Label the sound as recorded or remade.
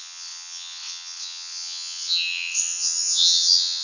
remade